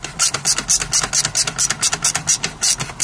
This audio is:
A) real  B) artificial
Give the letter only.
A